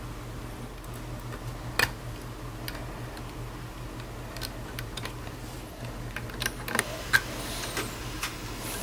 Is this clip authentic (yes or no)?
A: yes